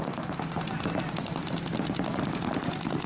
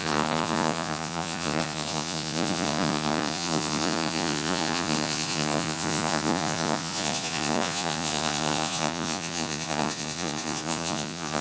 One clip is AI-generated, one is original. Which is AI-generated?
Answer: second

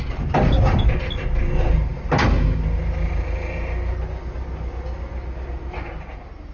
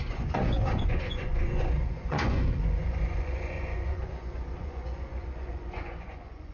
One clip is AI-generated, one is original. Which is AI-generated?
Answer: second